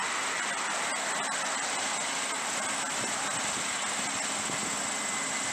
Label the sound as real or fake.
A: real